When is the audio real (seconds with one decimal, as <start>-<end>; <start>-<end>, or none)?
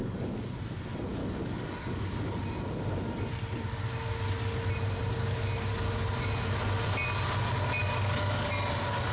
0.5-1.2; 2.0-7.8; 8.5-9.1